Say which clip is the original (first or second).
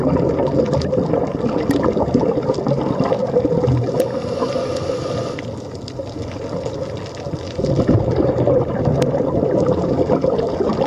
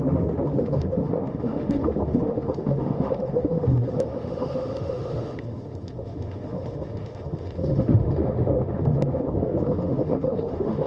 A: first